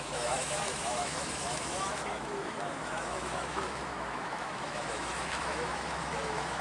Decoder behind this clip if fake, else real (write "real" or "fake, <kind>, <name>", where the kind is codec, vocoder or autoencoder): fake, autoencoder, DAC-VAE